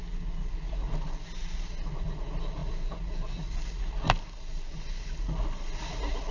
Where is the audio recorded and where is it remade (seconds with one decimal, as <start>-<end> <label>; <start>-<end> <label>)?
0.0-6.3 recorded